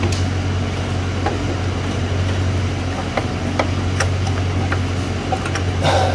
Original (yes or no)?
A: yes